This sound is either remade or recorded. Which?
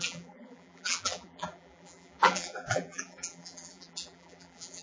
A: remade